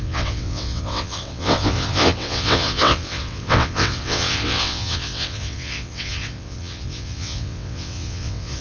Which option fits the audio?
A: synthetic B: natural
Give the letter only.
A